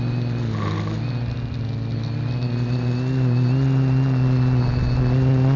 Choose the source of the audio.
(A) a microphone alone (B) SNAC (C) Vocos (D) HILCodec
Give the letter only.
A